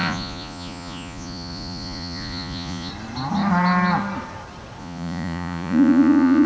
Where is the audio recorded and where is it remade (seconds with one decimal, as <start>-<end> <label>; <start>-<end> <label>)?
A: 0.0-2.9 remade; 2.9-4.8 recorded; 4.8-6.5 remade